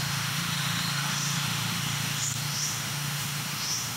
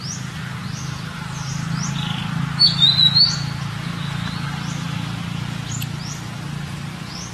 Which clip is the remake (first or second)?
first